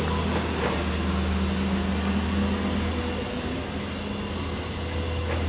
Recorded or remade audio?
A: recorded